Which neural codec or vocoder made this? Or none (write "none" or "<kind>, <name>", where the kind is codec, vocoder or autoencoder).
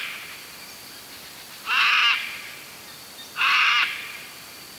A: vocoder, BigVGAN v2